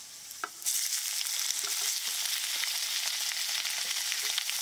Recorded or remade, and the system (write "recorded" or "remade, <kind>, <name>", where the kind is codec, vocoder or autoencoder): recorded